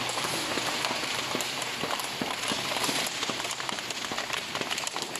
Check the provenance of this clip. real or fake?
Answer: fake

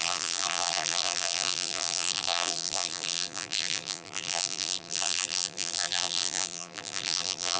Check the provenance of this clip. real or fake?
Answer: fake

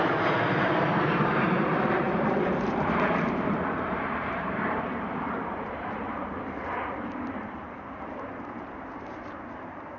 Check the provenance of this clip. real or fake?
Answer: fake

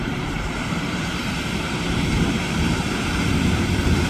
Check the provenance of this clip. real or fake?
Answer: fake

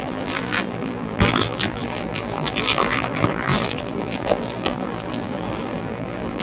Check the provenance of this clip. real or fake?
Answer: fake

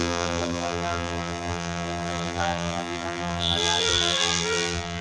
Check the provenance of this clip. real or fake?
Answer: fake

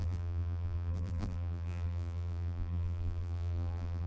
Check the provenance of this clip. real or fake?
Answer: fake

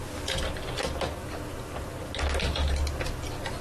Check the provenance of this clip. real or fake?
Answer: real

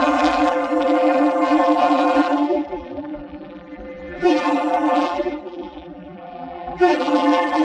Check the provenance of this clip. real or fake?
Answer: fake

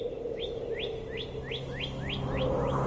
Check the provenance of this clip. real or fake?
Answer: real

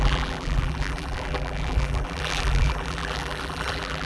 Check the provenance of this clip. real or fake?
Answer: fake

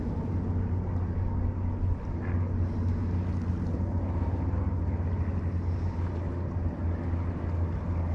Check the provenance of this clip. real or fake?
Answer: real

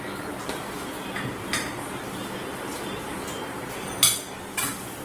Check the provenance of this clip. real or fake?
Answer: real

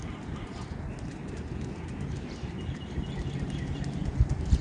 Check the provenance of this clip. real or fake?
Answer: real